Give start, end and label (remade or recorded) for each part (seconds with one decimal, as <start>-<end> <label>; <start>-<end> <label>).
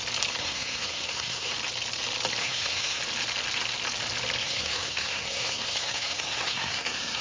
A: 0.0-0.4 recorded; 0.4-1.5 remade; 1.5-2.4 recorded; 2.4-3.0 remade; 3.0-4.4 recorded; 4.4-7.2 remade